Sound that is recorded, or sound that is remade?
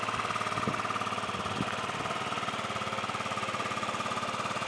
recorded